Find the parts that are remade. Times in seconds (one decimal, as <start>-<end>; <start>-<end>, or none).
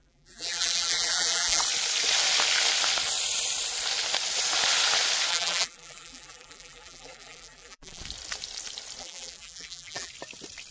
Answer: 0.0-1.6; 5.3-8.0; 9.0-10.1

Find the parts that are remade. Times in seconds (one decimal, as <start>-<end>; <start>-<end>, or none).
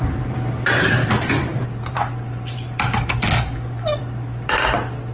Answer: 1.0-4.0